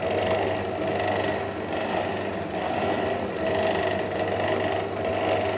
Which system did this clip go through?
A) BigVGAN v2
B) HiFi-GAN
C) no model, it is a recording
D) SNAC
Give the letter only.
C